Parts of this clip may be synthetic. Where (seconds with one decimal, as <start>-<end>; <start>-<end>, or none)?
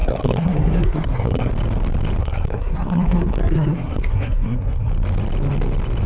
0.0-1.5; 2.2-4.9